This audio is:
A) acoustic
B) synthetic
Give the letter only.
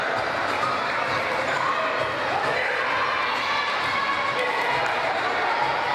A